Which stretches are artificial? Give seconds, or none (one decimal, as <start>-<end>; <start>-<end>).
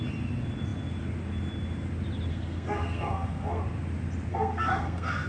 2.3-3.6; 4.3-5.3